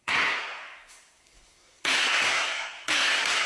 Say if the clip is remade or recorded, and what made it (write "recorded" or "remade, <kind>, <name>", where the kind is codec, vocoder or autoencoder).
remade, codec, SNAC